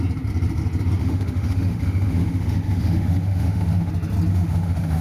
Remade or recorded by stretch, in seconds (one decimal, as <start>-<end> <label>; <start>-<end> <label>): 0.0-1.0 recorded; 1.0-3.9 remade; 3.9-4.3 recorded; 4.3-5.0 remade